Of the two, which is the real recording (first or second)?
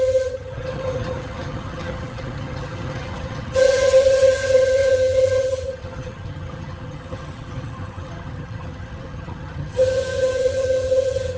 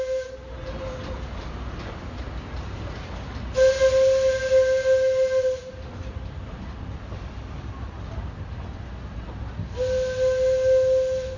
second